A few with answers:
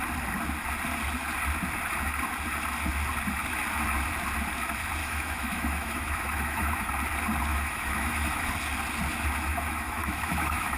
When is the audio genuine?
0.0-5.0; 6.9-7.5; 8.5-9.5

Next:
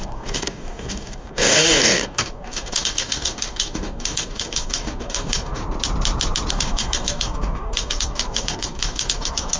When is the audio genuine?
5.6-6.5